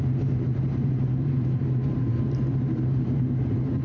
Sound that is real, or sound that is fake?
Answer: fake